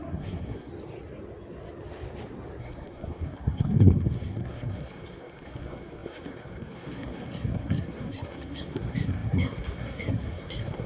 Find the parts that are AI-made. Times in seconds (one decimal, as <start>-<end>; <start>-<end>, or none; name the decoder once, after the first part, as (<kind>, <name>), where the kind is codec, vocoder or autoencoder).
0.0-0.7 (codec, SNAC); 2.6-10.9